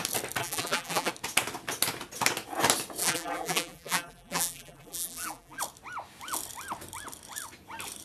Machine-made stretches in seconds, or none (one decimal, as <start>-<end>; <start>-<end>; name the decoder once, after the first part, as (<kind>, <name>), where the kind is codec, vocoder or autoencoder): 0.4-1.1 (vocoder, BigVGAN v2); 3.0-5.6